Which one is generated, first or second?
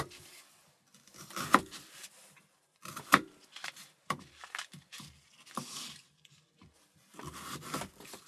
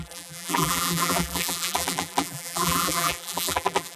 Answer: second